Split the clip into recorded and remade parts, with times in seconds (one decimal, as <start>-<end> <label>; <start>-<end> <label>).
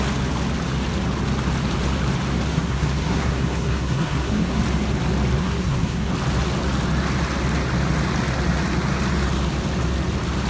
0.0-2.5 recorded; 2.5-4.6 remade; 4.6-5.4 recorded; 5.4-6.1 remade; 6.1-10.5 recorded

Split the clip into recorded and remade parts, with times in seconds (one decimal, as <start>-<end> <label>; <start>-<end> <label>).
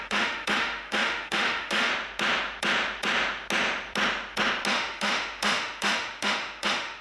0.0-1.9 remade; 1.9-4.7 recorded; 4.7-7.0 remade